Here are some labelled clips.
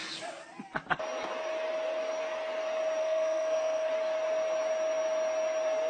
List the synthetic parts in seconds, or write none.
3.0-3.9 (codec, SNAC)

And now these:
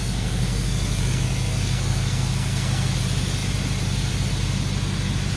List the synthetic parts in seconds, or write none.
0.0-3.0 (codec, SNAC)

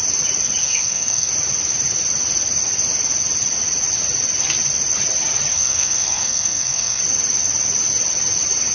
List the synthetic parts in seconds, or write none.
0.6-1.3 (codec, SNAC); 5.5-7.0

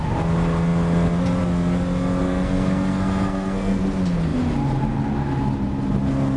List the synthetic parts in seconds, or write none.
2.2-3.8 (codec, SNAC)